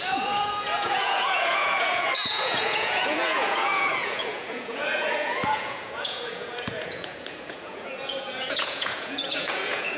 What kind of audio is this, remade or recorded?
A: remade